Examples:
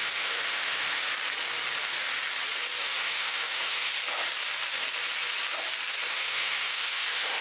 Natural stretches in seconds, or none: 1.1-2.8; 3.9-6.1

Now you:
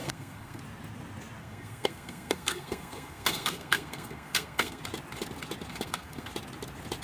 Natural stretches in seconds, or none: 0.6-1.4; 4.8-5.7; 6.3-7.0

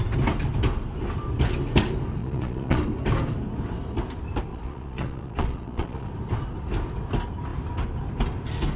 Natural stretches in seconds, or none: 0.0-2.2; 2.8-4.5; 6.1-8.8